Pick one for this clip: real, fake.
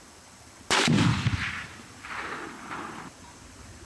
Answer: real